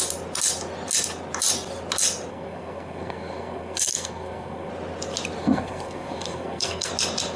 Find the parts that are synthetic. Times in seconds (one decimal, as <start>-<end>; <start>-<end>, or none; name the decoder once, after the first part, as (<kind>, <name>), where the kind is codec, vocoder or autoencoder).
2.3-4.7 (codec, SNAC); 5.4-6.9